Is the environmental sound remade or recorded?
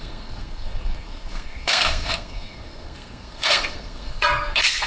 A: remade